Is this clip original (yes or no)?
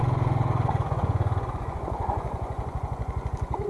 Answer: no